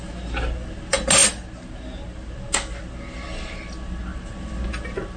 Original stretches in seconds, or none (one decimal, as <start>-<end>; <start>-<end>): 0.0-5.2